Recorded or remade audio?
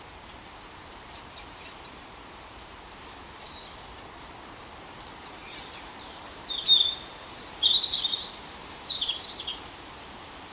remade